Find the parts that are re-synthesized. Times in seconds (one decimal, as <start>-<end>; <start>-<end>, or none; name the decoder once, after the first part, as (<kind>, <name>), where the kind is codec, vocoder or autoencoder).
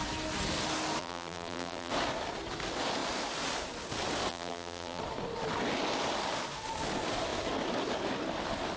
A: 1.0-1.9 (vocoder, BigVGAN v2); 4.3-5.0